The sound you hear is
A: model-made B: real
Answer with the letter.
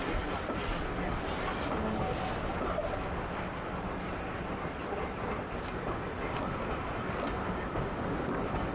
B